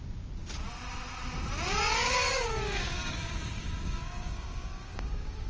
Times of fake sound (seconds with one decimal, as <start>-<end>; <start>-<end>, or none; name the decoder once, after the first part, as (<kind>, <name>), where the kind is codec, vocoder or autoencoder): 2.0-5.5 (codec, DAC)